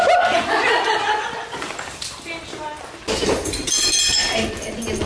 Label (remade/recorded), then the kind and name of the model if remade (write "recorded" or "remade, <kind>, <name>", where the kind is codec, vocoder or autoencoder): recorded